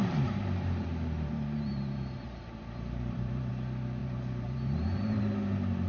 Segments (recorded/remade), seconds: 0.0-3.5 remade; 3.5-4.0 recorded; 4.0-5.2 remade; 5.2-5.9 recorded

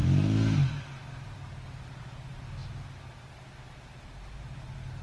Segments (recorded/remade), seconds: 0.0-5.0 recorded

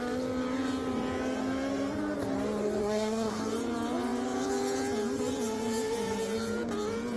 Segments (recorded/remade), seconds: 0.0-2.8 recorded; 2.8-3.4 remade; 3.4-7.2 recorded

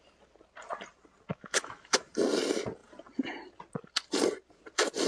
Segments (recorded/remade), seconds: 0.0-1.3 recorded; 1.3-2.1 remade; 2.1-5.1 recorded

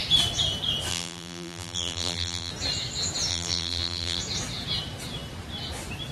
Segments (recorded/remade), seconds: 0.0-0.9 recorded; 0.9-2.5 remade; 2.5-3.3 recorded; 3.3-4.2 remade; 4.2-6.1 recorded